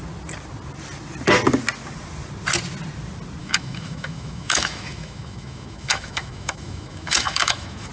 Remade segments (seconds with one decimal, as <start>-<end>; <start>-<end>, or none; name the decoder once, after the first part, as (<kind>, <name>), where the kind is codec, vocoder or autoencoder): 3.4-7.9 (autoencoder, DAC-VAE)